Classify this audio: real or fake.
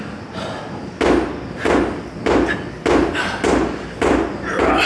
real